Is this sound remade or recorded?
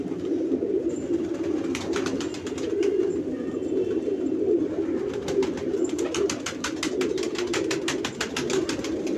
recorded